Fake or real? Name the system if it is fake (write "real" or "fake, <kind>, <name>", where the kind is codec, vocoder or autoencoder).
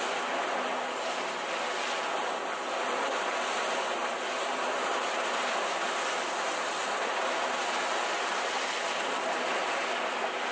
real